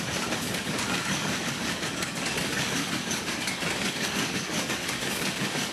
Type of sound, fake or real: fake